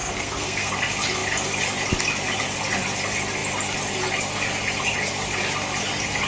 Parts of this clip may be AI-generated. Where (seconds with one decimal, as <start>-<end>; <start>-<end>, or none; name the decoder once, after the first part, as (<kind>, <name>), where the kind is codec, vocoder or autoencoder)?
0.0-0.7 (codec, SNAC)